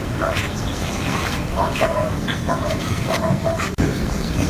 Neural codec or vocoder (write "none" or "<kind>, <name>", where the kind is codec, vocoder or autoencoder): codec, SNAC